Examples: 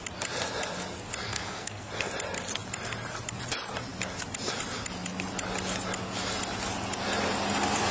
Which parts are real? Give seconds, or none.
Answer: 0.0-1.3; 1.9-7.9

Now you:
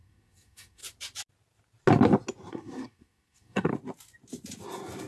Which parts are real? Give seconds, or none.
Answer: 0.8-2.5; 3.7-5.1